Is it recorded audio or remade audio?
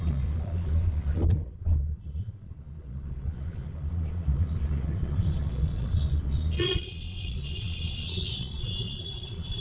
remade